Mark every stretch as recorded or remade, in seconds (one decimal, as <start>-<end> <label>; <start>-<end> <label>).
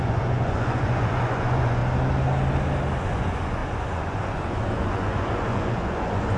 0.0-1.8 remade; 1.8-3.0 recorded; 3.0-6.4 remade